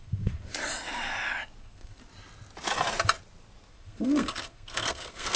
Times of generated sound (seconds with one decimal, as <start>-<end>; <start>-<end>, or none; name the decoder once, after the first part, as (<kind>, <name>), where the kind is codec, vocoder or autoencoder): 0.0-0.5 (codec, SNAC); 1.6-2.0; 3.7-5.4